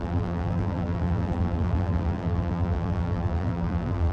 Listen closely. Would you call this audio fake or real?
fake